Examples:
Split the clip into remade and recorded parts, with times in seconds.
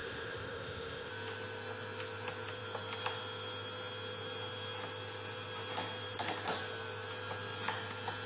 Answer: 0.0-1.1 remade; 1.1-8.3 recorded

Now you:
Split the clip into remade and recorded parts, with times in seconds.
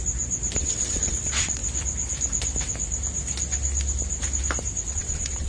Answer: 0.0-0.6 recorded; 0.6-1.6 remade; 1.6-4.9 recorded; 4.9-5.5 remade